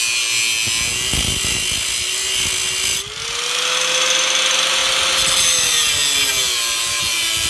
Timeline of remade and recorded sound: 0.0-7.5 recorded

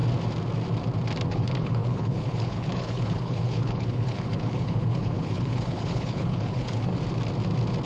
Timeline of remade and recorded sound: 0.0-1.3 recorded; 1.3-6.9 remade; 6.9-7.9 recorded

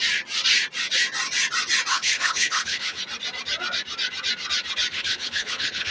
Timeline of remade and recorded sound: 0.0-1.9 recorded; 1.9-3.0 remade; 3.0-4.9 recorded; 4.9-5.9 remade

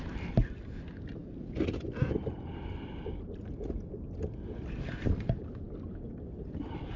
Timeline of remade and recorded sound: 0.0-7.0 recorded